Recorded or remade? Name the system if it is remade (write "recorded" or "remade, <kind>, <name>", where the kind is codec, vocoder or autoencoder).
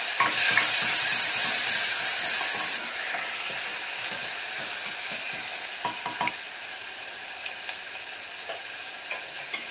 recorded